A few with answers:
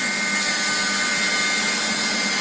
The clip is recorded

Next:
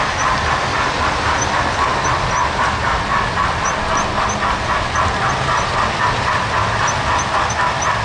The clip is recorded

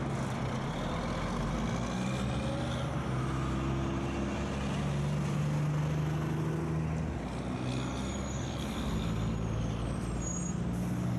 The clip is recorded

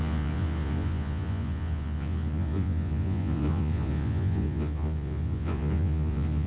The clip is remade